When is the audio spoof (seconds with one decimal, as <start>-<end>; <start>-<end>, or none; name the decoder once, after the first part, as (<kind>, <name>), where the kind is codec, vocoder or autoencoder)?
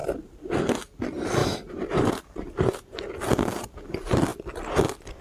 0.0-0.5 (vocoder, BigVGAN v2); 1.4-3.0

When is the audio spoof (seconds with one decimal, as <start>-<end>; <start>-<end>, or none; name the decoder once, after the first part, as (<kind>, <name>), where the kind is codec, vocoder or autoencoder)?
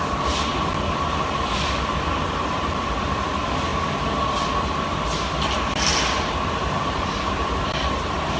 0.0-3.7 (vocoder, BigVGAN v2); 6.5-8.4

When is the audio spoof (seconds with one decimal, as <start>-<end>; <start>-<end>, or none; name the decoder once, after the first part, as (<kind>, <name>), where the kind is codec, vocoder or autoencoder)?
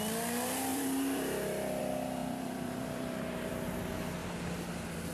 0.7-1.8 (vocoder, BigVGAN v2); 2.2-3.5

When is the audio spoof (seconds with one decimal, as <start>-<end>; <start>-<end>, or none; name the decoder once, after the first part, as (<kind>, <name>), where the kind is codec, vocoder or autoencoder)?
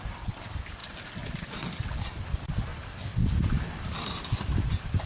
0.8-2.2 (vocoder, BigVGAN v2); 2.7-5.1